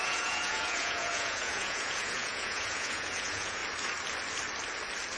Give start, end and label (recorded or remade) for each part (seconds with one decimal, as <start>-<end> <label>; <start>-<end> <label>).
0.0-3.6 remade; 3.6-5.2 recorded